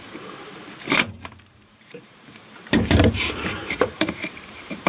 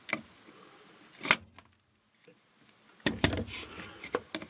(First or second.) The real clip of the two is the second